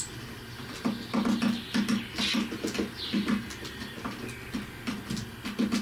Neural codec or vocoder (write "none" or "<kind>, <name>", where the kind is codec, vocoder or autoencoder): none